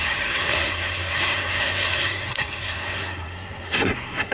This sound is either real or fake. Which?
fake